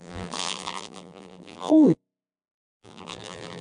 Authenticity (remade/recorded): remade